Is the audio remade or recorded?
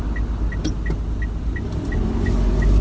recorded